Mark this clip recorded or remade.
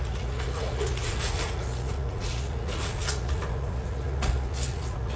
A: remade